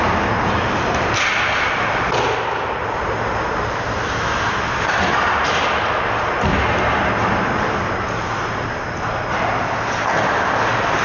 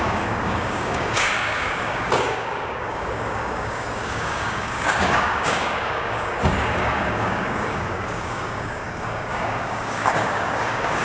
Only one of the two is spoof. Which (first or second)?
second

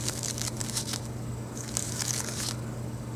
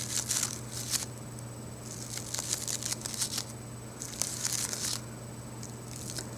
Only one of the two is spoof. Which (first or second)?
first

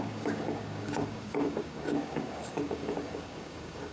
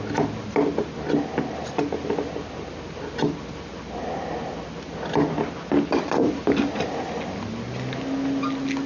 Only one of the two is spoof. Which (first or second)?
first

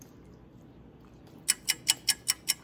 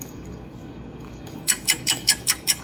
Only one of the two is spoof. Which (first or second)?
second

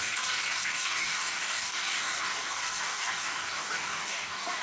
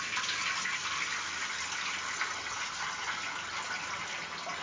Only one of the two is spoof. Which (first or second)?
first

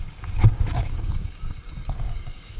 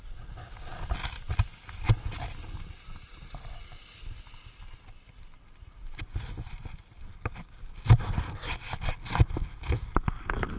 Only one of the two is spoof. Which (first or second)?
first